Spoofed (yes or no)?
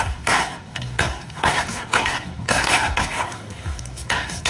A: yes